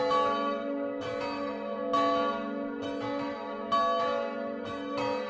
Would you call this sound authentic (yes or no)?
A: yes